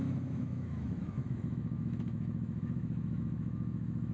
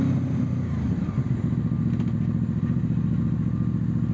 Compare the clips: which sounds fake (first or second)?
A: first